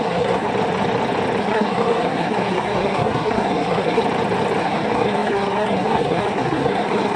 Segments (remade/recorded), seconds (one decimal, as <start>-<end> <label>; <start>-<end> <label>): 0.0-0.5 remade; 0.5-1.4 recorded; 1.4-4.0 remade; 4.0-4.6 recorded; 4.6-7.2 remade